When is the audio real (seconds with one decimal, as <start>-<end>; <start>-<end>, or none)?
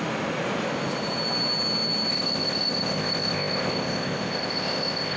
0.0-2.1